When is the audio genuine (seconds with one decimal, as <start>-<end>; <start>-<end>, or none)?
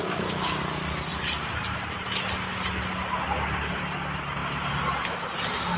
0.6-5.8